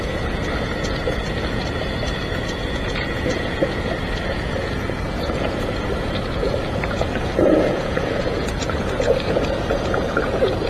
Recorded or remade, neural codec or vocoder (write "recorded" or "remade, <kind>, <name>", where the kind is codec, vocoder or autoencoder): remade, vocoder, Vocos